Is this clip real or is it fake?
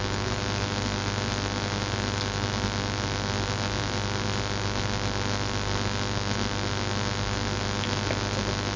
real